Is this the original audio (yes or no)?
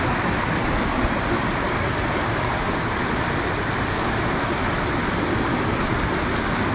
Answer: yes